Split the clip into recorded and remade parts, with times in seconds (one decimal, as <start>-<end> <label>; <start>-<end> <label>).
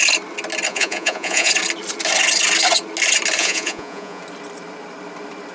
0.0-0.7 recorded; 0.7-1.5 remade; 1.5-3.4 recorded; 3.4-4.2 remade; 4.2-5.5 recorded